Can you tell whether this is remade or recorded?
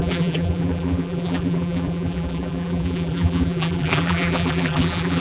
remade